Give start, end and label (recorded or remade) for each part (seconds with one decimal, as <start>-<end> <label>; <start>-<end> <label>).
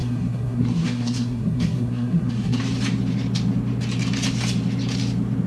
0.0-2.6 remade; 2.6-5.5 recorded